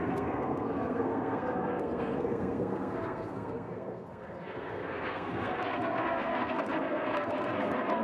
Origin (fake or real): fake